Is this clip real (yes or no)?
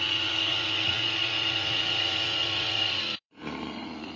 no